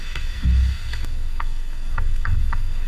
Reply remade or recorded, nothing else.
remade